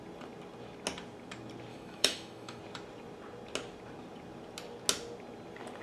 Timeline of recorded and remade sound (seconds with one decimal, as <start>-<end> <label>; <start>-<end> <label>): 0.0-1.7 recorded; 1.7-2.6 remade; 2.6-5.8 recorded